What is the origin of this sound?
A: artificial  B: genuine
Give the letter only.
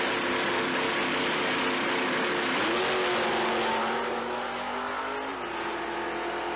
B